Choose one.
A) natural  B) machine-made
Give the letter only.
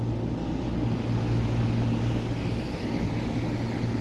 A